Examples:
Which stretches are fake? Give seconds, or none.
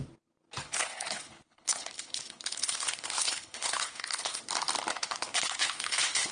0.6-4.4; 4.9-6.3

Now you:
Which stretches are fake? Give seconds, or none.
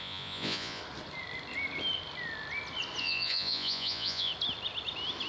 0.0-0.8; 3.0-4.3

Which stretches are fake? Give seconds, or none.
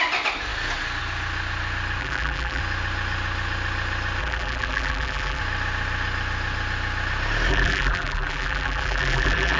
2.0-2.6; 4.2-5.4; 7.5-9.6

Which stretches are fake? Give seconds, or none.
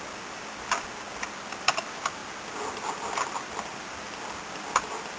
none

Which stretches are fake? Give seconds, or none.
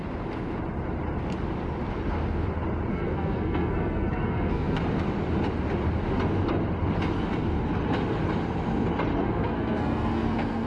2.9-4.8; 9.2-10.7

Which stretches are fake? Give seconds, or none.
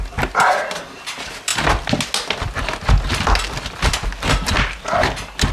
none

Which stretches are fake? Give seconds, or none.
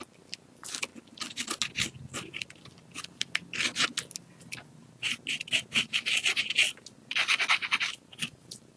none